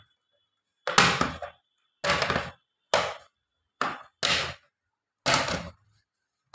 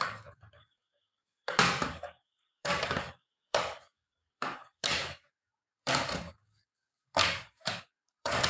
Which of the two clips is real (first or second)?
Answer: first